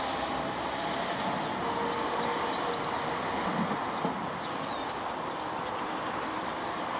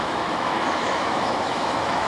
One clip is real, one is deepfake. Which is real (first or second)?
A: first